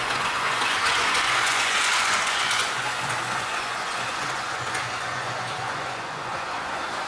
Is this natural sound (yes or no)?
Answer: no